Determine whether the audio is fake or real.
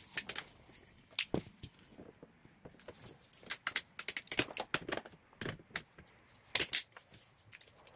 real